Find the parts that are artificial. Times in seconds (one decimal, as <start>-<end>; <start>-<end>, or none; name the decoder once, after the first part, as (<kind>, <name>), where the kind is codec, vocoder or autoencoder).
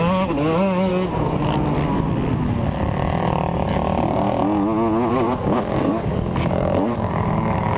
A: 0.0-0.9 (codec, DAC); 5.1-7.8